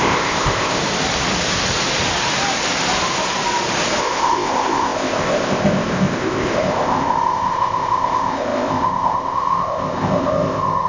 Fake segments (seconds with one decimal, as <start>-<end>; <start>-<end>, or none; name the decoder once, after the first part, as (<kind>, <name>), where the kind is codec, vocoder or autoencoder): 0.0-0.8 (codec, ZipCodec); 4.0-10.9